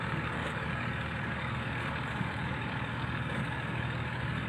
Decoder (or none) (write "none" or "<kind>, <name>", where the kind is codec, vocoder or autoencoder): codec, DAC